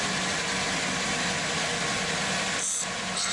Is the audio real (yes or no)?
yes